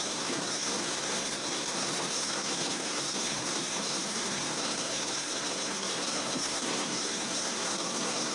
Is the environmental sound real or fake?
fake